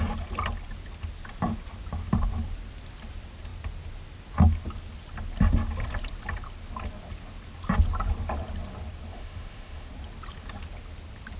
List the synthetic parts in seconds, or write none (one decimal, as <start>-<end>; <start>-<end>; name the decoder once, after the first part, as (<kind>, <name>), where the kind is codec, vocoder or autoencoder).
9.1-9.9 (autoencoder, DAC-VAE)